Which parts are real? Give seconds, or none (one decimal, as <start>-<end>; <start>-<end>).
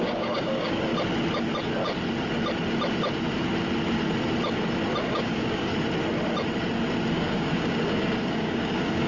0.9-5.0; 5.7-7.1